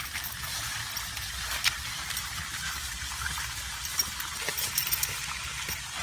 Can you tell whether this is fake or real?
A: real